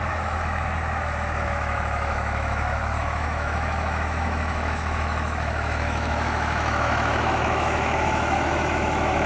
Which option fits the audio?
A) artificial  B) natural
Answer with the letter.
A